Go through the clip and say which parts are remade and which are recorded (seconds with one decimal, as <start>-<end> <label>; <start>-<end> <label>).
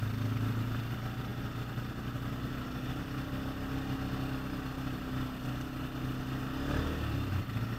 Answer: 0.0-7.8 recorded